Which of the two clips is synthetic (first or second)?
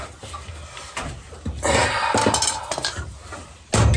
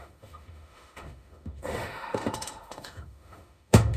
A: second